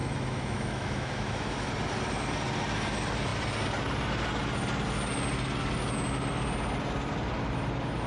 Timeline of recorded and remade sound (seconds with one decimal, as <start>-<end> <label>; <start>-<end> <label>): 0.0-1.7 remade; 1.7-8.1 recorded